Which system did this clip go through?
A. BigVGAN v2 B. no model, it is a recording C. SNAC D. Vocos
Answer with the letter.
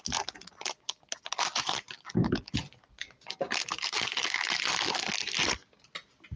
B